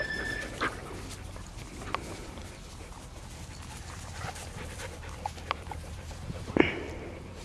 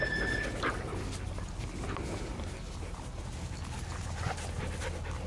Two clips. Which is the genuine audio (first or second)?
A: second